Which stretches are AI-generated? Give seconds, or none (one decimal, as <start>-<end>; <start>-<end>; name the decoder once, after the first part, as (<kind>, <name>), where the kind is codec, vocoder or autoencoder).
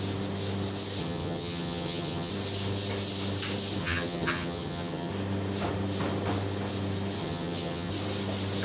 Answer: 1.0-2.3 (vocoder, HiFi-GAN); 3.8-5.1; 7.2-7.9